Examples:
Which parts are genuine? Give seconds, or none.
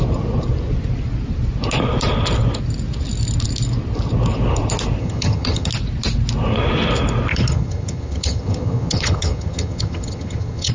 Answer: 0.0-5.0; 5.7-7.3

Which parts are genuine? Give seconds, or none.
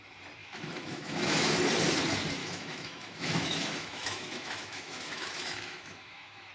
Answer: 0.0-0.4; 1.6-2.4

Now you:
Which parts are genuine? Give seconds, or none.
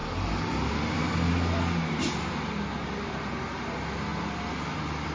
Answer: 0.0-5.1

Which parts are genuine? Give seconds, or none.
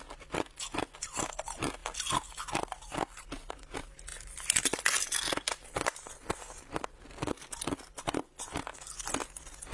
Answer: 0.0-9.7